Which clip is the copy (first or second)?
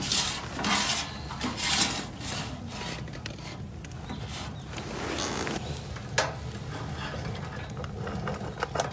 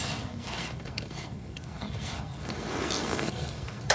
second